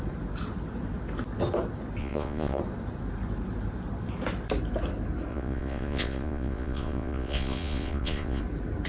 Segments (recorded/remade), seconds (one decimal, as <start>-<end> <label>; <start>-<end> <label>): 0.0-2.0 recorded; 2.0-2.6 remade; 2.6-5.3 recorded; 5.3-8.4 remade; 8.4-8.9 recorded